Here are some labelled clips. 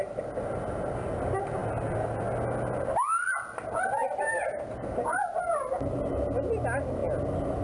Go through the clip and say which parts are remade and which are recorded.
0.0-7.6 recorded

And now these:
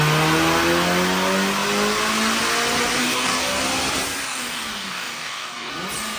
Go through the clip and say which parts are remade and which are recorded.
0.0-3.0 recorded; 3.0-3.6 remade; 3.6-4.2 recorded; 4.2-5.7 remade; 5.7-6.2 recorded